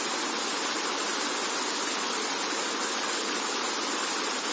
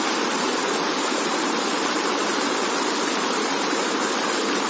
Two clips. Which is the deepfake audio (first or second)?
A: second